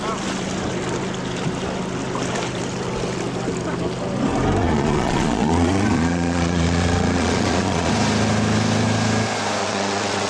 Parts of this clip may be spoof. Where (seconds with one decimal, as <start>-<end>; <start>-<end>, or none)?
4.6-7.9; 9.6-10.3